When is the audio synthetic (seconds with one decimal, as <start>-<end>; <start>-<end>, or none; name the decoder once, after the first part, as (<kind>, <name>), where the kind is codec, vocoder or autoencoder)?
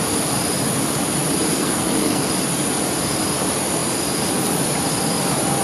1.5-2.3 (codec, SNAC)